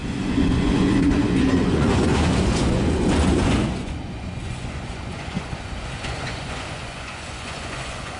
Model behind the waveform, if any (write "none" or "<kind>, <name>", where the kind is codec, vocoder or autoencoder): vocoder, Vocos